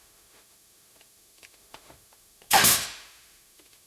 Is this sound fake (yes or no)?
yes